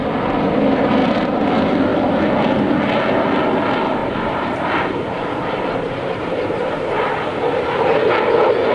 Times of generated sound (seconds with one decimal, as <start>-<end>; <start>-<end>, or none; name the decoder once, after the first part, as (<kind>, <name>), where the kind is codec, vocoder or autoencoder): 1.0-1.5 (vocoder, BigVGAN v2); 4.0-6.9